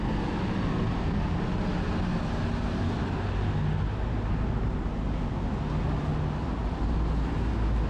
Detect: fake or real real